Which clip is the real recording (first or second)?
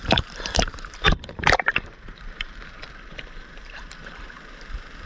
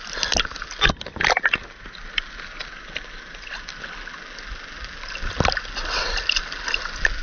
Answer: second